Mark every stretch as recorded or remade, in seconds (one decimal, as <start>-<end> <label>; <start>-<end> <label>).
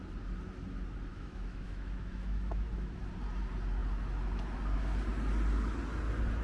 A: 0.0-1.1 recorded; 1.1-3.0 remade; 3.0-6.4 recorded